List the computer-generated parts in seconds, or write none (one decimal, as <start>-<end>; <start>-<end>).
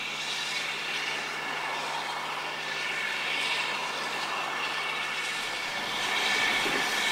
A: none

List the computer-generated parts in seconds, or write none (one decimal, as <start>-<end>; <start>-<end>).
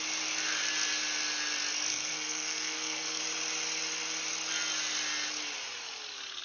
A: 1.9-3.2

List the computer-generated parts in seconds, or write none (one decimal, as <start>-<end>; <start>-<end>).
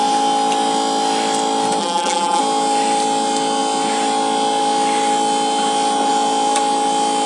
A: 1.8-2.4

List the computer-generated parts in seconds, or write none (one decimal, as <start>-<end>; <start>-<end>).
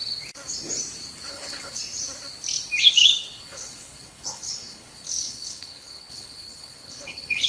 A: 1.3-1.8; 2.8-7.5